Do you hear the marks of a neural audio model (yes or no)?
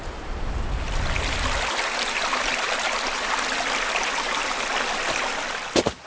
no